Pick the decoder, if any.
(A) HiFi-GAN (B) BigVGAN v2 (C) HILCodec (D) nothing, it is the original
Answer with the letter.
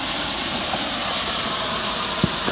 B